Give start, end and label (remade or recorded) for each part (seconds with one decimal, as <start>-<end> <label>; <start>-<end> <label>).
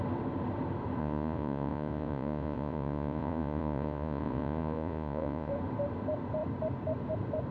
0.0-1.0 recorded; 1.0-5.5 remade; 5.5-7.5 recorded